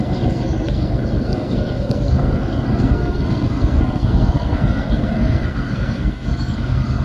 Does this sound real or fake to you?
fake